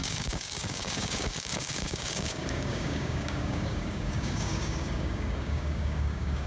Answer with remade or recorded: remade